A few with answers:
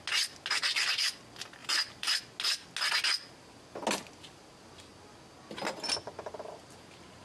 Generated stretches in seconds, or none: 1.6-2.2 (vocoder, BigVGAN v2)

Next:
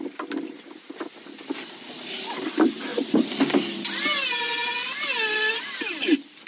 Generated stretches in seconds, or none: none